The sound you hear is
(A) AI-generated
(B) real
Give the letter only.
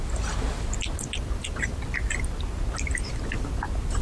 B